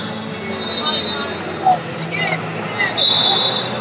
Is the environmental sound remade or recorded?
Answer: recorded